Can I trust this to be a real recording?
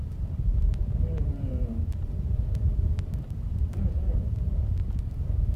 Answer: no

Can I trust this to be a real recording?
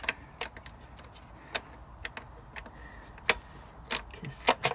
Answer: yes